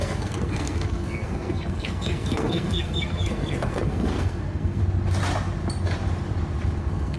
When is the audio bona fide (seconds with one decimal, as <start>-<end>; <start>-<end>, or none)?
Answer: 4.8-6.8